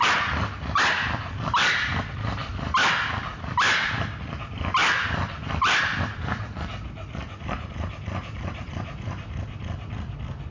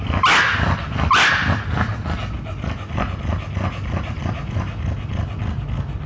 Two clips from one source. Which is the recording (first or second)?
second